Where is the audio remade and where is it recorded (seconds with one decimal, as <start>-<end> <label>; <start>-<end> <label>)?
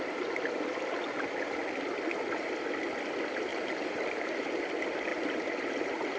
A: 0.0-3.5 recorded; 3.5-4.4 remade; 4.4-6.2 recorded